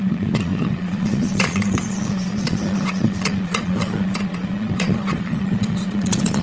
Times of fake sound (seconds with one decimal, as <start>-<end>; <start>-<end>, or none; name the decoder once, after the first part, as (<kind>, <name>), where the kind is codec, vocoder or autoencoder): 0.0-6.4 (vocoder, Vocos)